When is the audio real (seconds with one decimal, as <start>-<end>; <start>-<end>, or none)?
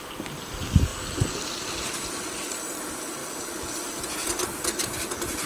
0.0-5.5